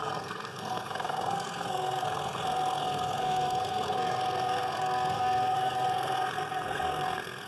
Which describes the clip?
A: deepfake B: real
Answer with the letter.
A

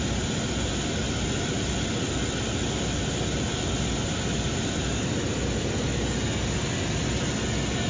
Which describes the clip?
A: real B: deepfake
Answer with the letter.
A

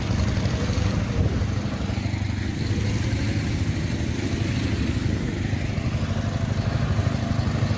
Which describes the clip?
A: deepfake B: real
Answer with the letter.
B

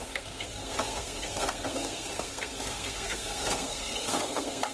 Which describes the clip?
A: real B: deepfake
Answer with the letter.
B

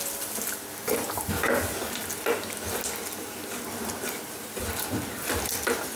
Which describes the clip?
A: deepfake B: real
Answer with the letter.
B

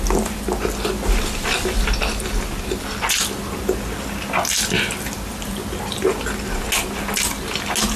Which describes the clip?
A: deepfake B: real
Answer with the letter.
B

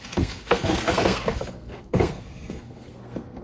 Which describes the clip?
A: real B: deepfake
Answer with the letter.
B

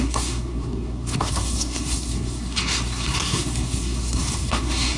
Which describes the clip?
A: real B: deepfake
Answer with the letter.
B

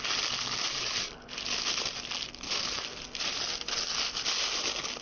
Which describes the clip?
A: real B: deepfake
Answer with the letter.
A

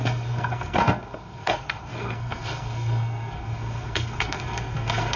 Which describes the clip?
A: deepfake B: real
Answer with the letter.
A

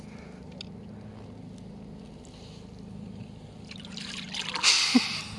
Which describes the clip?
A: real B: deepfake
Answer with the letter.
A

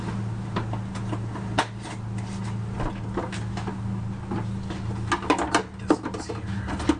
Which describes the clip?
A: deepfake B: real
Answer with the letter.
B